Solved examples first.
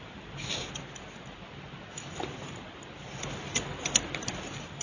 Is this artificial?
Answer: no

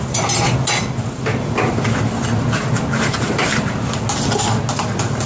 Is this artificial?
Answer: no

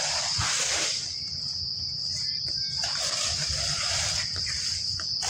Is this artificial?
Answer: no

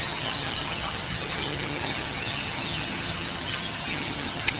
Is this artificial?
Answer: yes